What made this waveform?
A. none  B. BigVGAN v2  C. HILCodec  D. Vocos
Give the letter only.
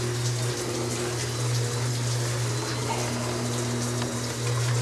A